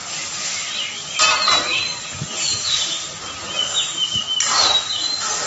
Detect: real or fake real